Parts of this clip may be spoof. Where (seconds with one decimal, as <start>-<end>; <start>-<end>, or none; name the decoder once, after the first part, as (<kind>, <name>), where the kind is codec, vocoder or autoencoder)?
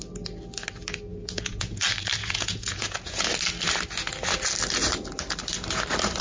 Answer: 1.1-1.8 (vocoder, Vocos); 2.2-3.3